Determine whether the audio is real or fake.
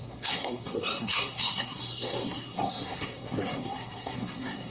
fake